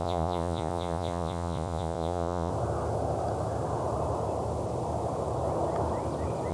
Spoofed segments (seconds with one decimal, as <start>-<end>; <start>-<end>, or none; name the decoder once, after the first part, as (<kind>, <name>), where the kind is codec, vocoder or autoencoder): 0.0-2.5 (vocoder, Vocos)